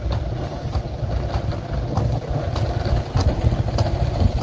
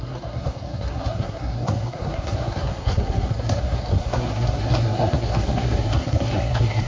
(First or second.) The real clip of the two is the first